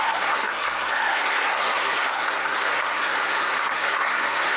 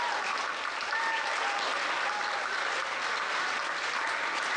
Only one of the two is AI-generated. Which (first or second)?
first